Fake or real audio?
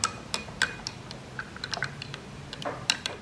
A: real